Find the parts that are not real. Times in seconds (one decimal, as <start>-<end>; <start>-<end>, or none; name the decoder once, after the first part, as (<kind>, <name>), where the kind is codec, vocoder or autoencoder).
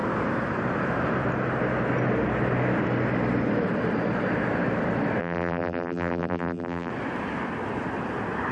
5.2-6.9 (vocoder, BigVGAN v2)